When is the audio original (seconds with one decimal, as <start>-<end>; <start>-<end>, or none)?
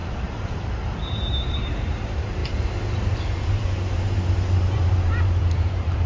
none